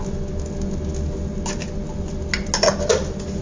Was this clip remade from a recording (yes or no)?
no